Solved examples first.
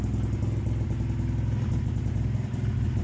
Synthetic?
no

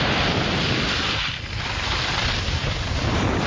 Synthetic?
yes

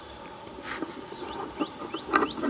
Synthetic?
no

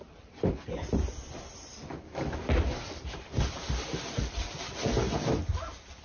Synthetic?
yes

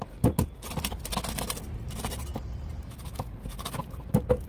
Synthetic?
no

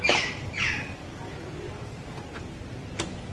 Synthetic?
no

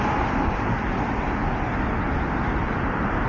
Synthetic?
no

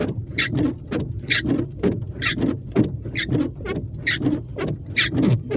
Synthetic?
yes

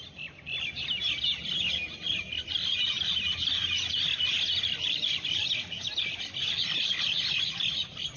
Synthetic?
no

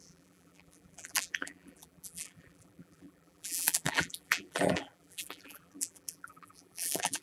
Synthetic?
yes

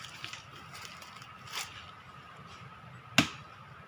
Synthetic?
no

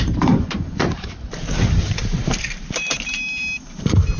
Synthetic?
yes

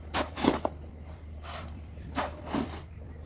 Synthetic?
yes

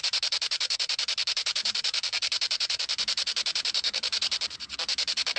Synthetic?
yes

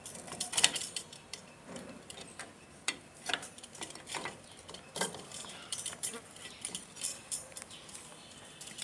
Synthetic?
yes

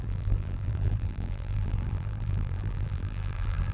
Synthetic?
yes